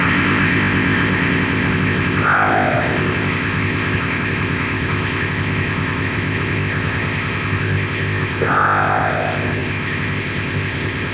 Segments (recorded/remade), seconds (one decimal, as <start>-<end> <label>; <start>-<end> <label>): 0.0-11.1 remade